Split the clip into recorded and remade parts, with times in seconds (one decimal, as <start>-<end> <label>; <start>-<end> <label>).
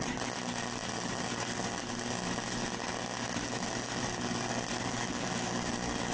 0.0-6.1 recorded